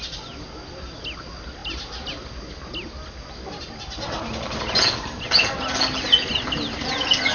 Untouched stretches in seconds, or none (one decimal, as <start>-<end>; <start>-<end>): 0.0-7.3